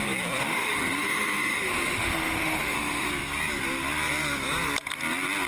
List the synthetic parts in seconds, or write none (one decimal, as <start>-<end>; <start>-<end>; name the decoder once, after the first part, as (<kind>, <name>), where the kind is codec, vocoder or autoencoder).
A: 0.4-3.1 (autoencoder, DAC-VAE)